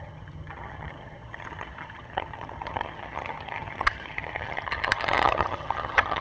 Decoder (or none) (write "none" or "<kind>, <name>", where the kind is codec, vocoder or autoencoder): vocoder, HiFi-GAN